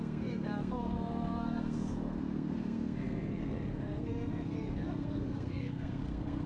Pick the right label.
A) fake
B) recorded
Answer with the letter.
A